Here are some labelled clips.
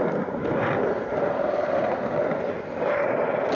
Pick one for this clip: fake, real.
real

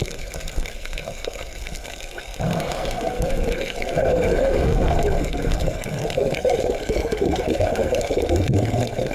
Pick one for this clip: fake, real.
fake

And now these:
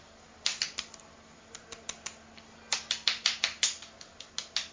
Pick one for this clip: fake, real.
real